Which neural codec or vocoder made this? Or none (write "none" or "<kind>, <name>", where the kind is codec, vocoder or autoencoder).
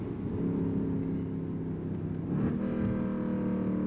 none